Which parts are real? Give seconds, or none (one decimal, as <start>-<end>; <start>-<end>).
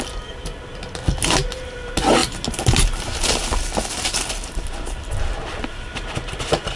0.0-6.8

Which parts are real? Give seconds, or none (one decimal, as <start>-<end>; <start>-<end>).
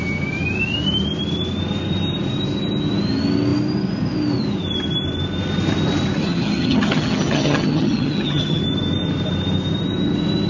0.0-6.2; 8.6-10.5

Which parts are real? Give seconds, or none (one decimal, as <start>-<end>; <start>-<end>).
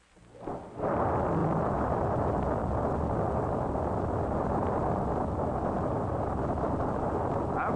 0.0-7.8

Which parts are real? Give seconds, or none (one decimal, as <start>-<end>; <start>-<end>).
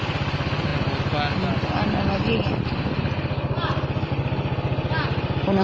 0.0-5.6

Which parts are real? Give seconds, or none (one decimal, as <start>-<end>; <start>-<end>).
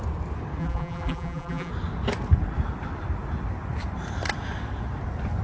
0.0-0.6; 1.7-5.4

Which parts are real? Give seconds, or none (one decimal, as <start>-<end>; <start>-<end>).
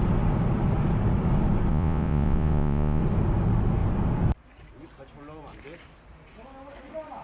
0.0-1.7; 3.0-7.2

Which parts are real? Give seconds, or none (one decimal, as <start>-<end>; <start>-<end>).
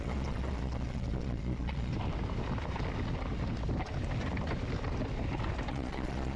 1.9-5.7